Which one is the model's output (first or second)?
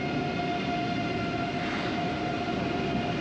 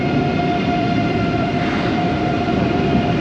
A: second